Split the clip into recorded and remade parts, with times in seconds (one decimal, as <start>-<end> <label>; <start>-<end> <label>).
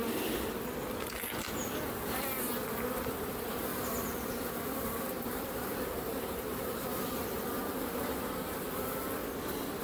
0.0-3.7 recorded; 3.7-8.2 remade; 8.2-9.8 recorded